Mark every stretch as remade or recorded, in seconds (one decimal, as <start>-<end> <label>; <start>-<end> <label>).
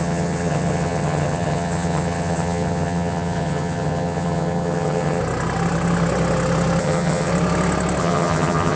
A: 0.0-5.2 remade; 5.2-6.8 recorded; 6.8-7.3 remade; 7.3-8.0 recorded; 8.0-8.8 remade